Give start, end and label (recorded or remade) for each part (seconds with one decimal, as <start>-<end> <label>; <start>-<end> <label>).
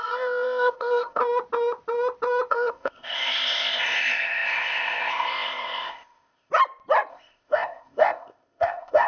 0.0-1.2 remade; 1.2-2.5 recorded; 2.5-6.5 remade; 6.5-7.1 recorded; 7.1-9.1 remade